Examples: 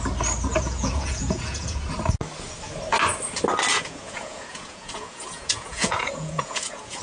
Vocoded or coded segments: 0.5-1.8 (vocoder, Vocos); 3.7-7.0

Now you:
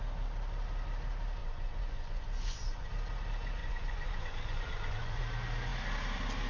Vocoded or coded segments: 1.4-2.9 (vocoder, Vocos); 3.6-5.2

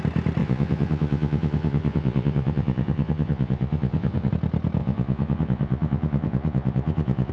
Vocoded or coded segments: 0.4-4.3 (vocoder, Vocos); 4.8-7.3

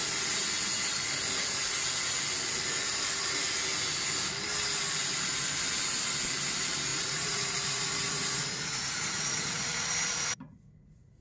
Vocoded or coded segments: 6.9-11.2 (vocoder, Vocos)

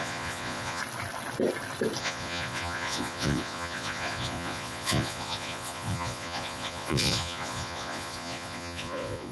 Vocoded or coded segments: 0.0-0.8 (vocoder, Vocos); 2.0-9.3

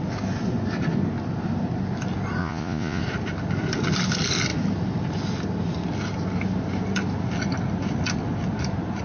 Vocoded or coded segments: 2.4-3.0 (vocoder, Vocos)